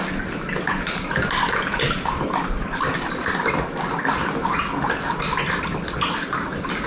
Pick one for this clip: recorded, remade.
recorded